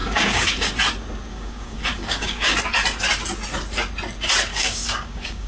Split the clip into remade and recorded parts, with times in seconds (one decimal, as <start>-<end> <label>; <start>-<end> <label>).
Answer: 0.0-0.8 remade; 0.8-1.3 recorded; 1.3-2.6 remade; 2.6-4.5 recorded; 4.5-5.5 remade